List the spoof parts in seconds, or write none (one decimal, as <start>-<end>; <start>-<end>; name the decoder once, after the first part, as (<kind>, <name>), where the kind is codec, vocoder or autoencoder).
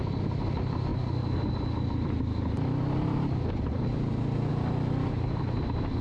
none